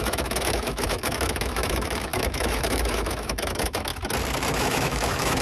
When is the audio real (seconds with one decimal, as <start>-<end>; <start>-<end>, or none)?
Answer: 3.9-4.5